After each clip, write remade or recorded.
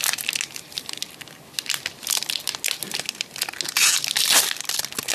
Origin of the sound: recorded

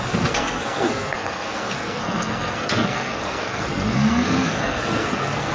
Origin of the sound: remade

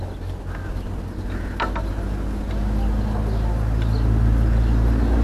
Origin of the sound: recorded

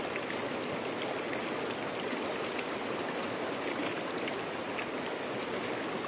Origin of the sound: recorded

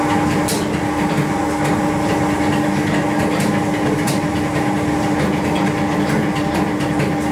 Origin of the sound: recorded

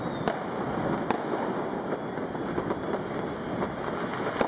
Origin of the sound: recorded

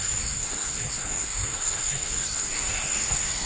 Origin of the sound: remade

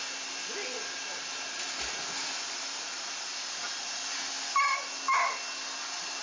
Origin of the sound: recorded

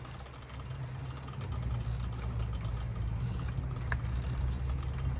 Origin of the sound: recorded